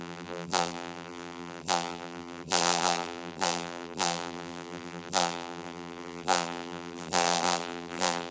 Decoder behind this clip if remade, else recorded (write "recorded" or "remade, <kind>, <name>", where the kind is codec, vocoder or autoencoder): remade, vocoder, BigVGAN v2